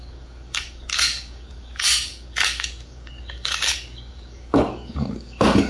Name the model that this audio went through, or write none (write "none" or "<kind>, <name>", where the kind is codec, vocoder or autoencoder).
codec, DAC